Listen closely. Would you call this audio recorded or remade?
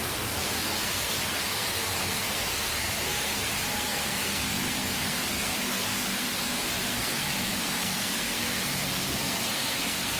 remade